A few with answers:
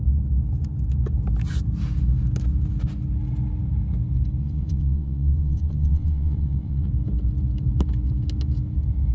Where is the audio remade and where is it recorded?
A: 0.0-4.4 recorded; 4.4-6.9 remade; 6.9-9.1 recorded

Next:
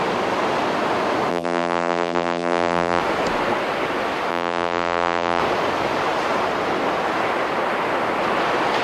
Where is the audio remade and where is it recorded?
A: 0.0-1.3 recorded; 1.3-3.0 remade; 3.0-4.3 recorded; 4.3-5.4 remade; 5.4-8.8 recorded

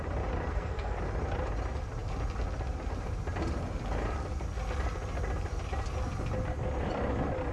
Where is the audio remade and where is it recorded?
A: 0.0-0.5 recorded; 0.5-1.0 remade; 1.0-7.5 recorded

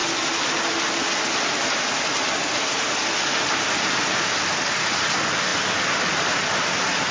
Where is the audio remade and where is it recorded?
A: 0.0-7.1 recorded

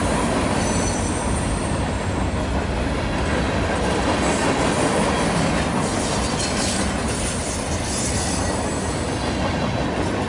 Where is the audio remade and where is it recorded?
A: 0.0-10.3 recorded

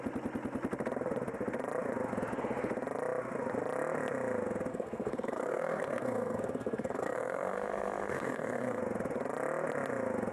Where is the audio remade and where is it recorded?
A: 0.0-4.7 recorded; 4.7-8.8 remade; 8.8-10.3 recorded

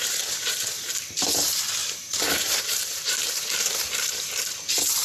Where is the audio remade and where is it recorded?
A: 0.0-0.9 remade; 0.9-1.8 recorded; 1.8-5.0 remade

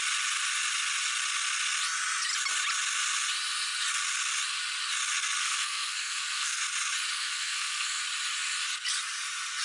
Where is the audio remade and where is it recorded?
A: 0.0-5.4 recorded; 5.4-6.6 remade; 6.6-7.1 recorded; 7.1-8.0 remade; 8.0-9.6 recorded